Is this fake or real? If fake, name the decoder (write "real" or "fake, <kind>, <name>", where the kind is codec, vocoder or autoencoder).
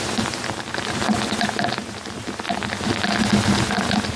real